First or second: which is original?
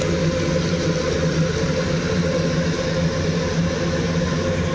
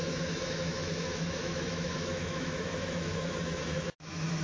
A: first